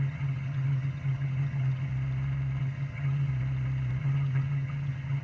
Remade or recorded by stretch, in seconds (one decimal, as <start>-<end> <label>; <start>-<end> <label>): 0.0-1.9 remade; 1.9-2.6 recorded; 2.6-3.3 remade; 3.3-4.0 recorded; 4.0-5.2 remade